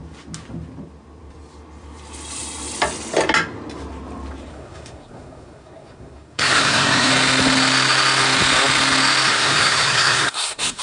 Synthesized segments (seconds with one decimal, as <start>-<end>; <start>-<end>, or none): 4.5-7.1; 9.3-10.8